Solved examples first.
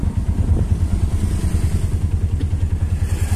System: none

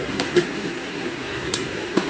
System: codec, SNAC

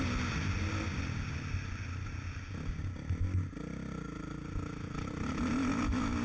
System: none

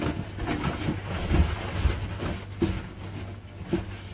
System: none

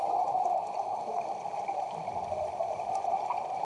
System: none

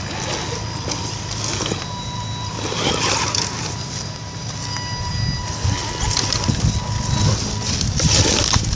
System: none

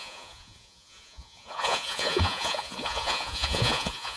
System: vocoder, Vocos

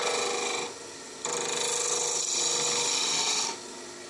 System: none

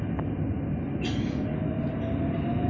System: none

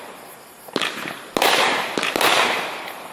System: none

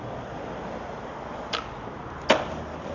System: none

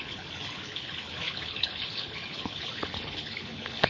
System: codec, HILCodec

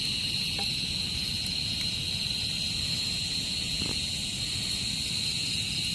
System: none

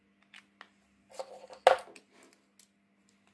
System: none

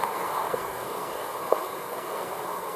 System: codec, SNAC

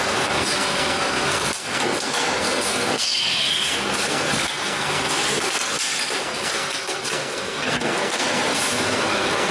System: codec, SNAC